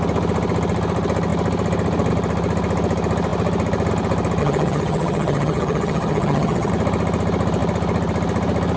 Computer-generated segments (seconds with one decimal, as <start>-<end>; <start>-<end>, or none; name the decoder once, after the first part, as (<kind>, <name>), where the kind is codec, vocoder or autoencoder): 4.4-6.7 (vocoder, HiFi-GAN)